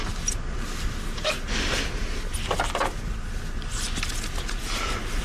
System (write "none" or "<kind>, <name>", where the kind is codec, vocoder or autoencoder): none